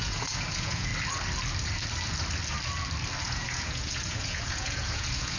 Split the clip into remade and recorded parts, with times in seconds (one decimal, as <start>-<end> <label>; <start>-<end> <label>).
0.0-0.9 remade; 0.9-3.2 recorded; 3.2-5.4 remade